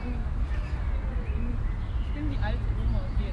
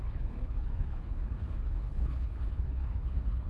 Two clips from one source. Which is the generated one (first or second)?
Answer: second